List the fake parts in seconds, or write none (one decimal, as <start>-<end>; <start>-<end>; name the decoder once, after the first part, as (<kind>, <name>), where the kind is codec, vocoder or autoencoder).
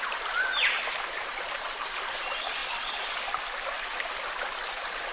none